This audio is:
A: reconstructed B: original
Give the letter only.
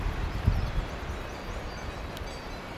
B